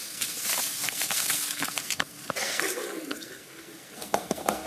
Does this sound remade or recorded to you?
remade